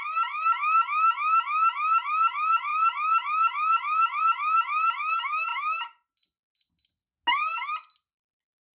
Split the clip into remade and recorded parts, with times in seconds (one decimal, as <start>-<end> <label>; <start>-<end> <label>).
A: 0.0-8.8 recorded